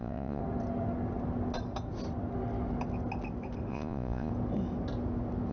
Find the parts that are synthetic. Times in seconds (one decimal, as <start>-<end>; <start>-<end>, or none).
0.0-0.4; 3.7-4.3